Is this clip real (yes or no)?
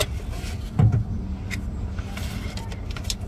yes